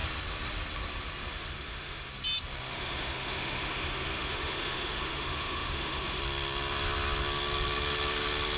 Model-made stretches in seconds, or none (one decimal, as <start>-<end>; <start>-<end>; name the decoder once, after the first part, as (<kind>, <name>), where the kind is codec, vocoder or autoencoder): 1.3-2.1 (autoencoder, DAC-VAE); 2.7-6.2